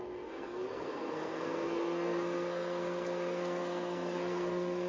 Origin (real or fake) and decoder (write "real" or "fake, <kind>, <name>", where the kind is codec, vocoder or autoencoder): fake, codec, SNAC